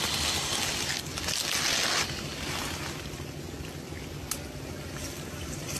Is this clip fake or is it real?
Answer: real